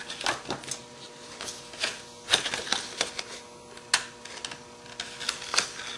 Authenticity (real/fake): real